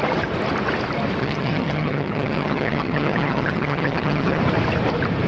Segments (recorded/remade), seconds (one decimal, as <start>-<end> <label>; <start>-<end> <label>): 0.0-1.2 recorded; 1.2-4.4 remade; 4.4-5.3 recorded